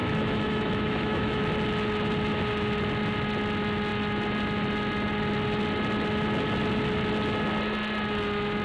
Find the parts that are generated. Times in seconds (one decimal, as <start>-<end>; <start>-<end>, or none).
0.0-1.4